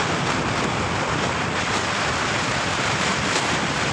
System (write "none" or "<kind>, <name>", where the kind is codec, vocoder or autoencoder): vocoder, BigVGAN v2